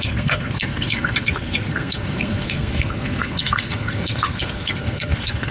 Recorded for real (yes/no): no